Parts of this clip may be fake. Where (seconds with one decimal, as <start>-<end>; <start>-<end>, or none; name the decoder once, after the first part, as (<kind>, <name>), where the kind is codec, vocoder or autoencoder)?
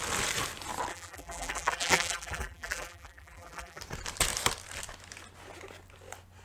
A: 0.9-3.8 (vocoder, BigVGAN v2)